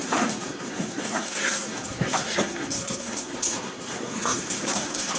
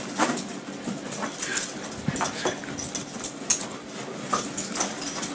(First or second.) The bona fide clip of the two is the second